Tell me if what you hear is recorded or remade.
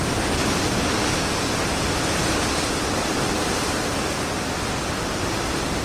recorded